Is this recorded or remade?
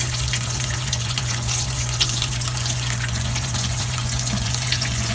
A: remade